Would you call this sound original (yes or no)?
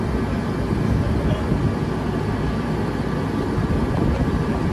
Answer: yes